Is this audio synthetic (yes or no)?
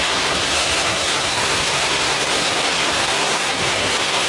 yes